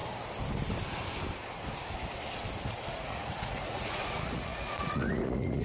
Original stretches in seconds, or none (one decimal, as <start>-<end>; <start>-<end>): 0.0-2.7